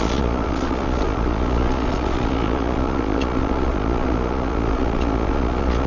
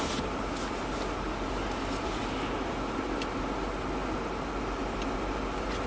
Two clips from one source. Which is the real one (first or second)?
second